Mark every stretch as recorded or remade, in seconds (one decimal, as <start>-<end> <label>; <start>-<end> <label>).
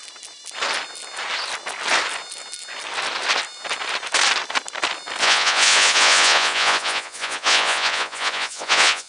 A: 0.0-5.2 recorded; 5.2-9.1 remade